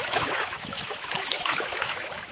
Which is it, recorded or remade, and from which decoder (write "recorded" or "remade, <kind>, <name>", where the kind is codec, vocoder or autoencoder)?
remade, autoencoder, DAC-VAE